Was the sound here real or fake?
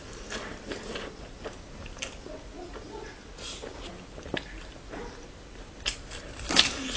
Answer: real